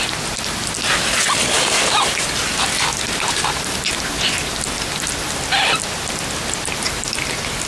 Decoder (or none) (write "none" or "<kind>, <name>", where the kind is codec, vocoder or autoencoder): none